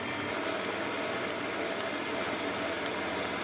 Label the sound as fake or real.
real